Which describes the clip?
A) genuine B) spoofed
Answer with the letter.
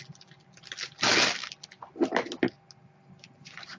A